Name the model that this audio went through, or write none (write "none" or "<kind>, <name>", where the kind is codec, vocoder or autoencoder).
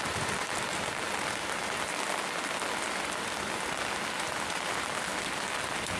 none